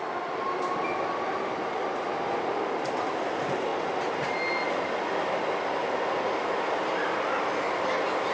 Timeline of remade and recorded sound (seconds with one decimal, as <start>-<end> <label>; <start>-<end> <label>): 0.0-8.3 recorded